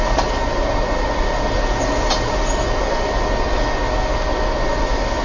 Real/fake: real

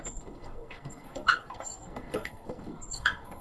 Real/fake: fake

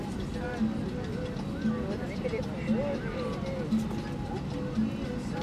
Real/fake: real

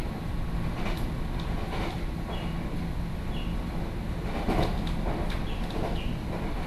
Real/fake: real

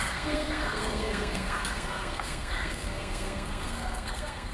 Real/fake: fake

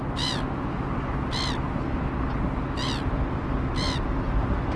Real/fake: real